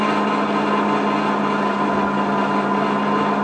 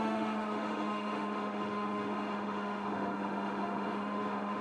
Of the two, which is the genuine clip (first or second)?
first